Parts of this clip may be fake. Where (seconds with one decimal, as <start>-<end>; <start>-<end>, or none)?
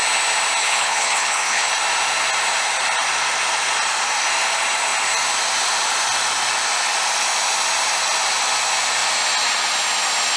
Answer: 0.6-1.7